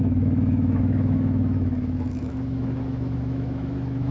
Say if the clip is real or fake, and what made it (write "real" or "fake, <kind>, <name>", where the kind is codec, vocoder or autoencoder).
fake, autoencoder, DAC-VAE